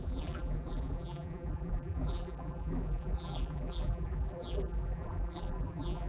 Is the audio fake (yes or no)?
yes